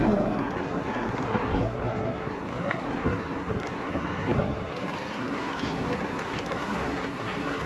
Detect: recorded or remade remade